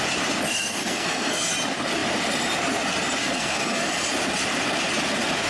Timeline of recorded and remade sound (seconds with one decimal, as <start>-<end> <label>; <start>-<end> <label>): 0.0-0.5 recorded; 0.5-1.5 remade; 1.5-3.2 recorded; 3.2-4.1 remade; 4.1-5.5 recorded